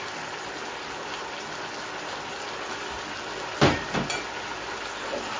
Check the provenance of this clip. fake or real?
real